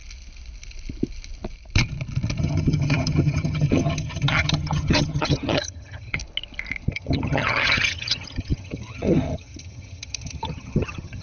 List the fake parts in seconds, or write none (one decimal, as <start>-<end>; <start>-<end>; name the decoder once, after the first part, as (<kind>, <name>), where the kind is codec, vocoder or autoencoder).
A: 2.4-6.2 (vocoder, HiFi-GAN); 6.9-11.2